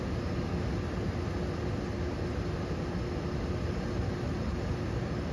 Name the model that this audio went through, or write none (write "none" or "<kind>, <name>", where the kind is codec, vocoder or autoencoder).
none